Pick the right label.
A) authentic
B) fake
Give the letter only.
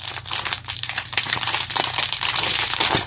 B